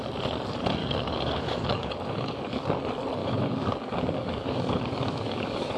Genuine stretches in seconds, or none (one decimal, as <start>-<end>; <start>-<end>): 0.0-0.8; 2.8-3.2